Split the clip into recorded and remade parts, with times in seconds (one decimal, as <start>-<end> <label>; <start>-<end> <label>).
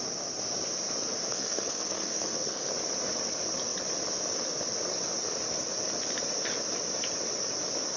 0.0-1.3 recorded; 1.3-2.7 remade; 2.7-8.0 recorded